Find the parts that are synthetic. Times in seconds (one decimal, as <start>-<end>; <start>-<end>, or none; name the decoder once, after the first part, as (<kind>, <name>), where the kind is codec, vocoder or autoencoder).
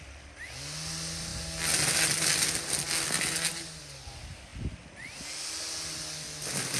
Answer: none